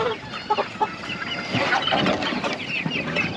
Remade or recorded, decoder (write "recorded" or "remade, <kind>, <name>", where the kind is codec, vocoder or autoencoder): recorded